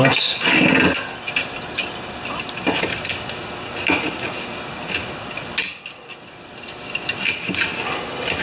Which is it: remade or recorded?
recorded